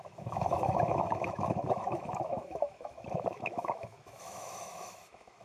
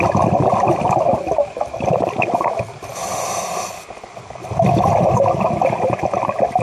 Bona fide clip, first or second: second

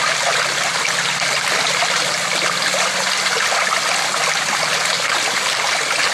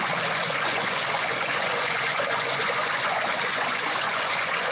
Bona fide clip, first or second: first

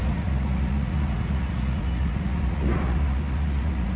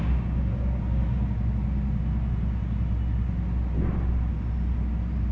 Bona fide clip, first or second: second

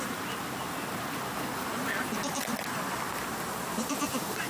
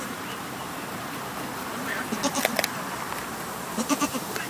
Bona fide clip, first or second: first